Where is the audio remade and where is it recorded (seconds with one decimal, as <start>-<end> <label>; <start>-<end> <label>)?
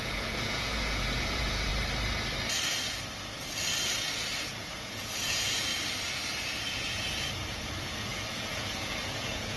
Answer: 0.0-1.7 remade; 1.7-4.4 recorded; 4.4-5.7 remade; 5.7-6.6 recorded; 6.6-9.6 remade